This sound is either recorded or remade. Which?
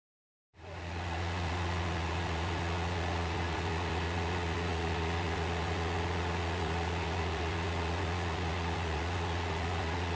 remade